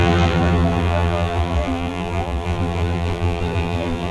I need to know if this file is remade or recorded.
remade